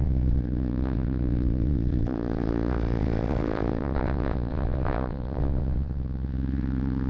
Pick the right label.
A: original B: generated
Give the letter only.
B